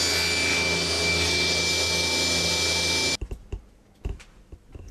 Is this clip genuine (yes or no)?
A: yes